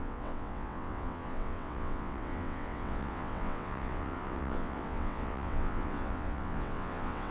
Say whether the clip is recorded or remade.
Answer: remade